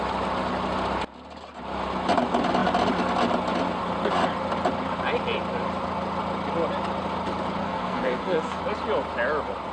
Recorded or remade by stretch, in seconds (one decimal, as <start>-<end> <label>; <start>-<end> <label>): 0.0-7.6 recorded; 7.6-8.6 remade; 8.6-9.7 recorded

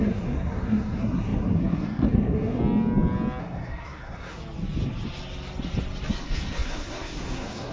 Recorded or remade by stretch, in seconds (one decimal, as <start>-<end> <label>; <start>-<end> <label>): 0.0-2.6 remade; 2.6-3.4 recorded; 3.4-4.4 remade; 4.4-6.1 recorded; 6.1-7.7 remade

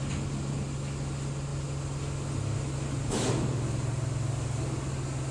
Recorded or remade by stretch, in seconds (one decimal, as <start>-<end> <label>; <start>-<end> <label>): 0.0-5.3 recorded

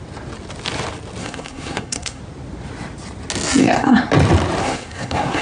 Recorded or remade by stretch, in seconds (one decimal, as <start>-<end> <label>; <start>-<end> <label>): 0.0-1.2 recorded; 1.2-2.2 remade; 2.2-3.6 recorded; 3.6-4.1 remade; 4.1-4.6 recorded; 4.6-5.4 remade

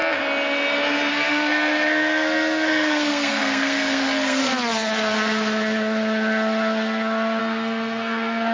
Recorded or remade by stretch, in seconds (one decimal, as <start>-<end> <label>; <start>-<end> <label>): 0.0-1.1 recorded; 1.1-4.4 remade; 4.4-7.4 recorded; 7.4-8.5 remade

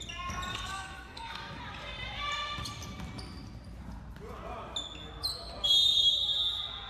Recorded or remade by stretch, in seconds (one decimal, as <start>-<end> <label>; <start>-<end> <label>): 0.0-0.5 recorded; 0.5-1.6 remade; 1.6-6.9 recorded

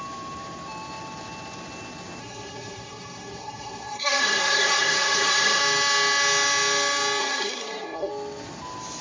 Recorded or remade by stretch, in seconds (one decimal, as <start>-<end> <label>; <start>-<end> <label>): 0.0-2.2 recorded; 2.2-5.6 remade; 5.6-7.2 recorded; 7.2-8.1 remade; 8.1-9.0 recorded

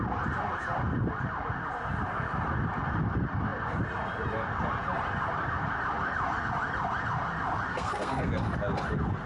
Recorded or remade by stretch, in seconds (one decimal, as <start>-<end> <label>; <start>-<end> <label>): 0.0-7.7 recorded; 7.7-8.3 remade; 8.3-9.3 recorded